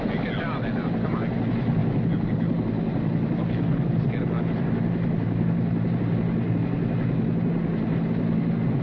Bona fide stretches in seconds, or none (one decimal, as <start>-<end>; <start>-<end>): 0.0-8.8